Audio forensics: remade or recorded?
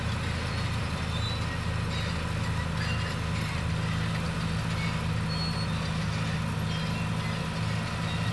recorded